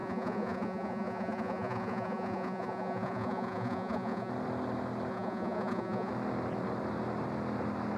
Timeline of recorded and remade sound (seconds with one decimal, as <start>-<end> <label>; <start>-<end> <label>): 0.0-4.3 remade; 4.3-5.1 recorded; 5.1-6.1 remade; 6.1-8.0 recorded